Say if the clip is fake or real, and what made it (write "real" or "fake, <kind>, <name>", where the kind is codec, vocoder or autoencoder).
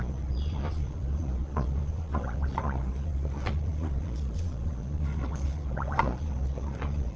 fake, vocoder, Vocos